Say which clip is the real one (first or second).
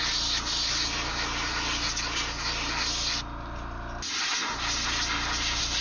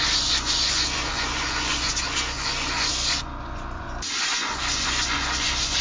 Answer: first